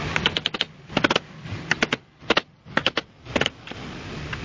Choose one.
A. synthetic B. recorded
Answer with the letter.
B